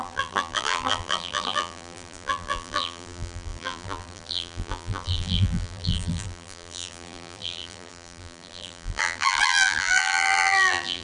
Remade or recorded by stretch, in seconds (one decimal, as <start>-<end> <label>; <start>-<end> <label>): 0.0-11.0 remade